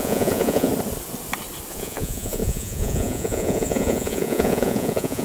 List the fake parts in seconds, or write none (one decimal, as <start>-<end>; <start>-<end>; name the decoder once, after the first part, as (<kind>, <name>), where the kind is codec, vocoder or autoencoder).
0.0-0.7 (vocoder, Vocos); 1.7-5.2